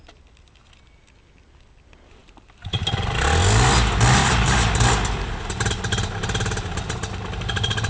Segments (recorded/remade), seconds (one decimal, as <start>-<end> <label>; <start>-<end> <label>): 0.0-2.2 recorded; 2.2-2.9 remade; 2.9-4.2 recorded; 4.2-4.7 remade; 4.7-7.9 recorded